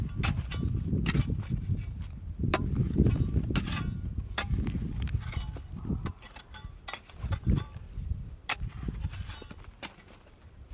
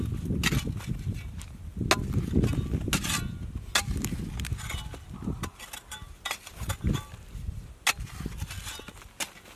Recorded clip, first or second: second